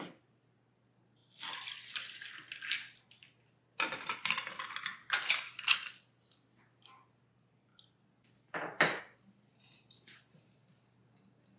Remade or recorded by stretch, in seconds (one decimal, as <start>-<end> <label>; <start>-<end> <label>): 0.0-11.6 recorded

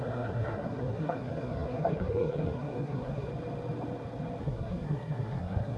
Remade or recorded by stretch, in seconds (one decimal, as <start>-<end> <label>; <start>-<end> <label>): 0.0-3.3 remade; 3.3-4.4 recorded; 4.4-5.8 remade